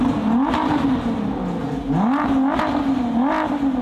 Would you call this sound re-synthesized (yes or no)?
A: no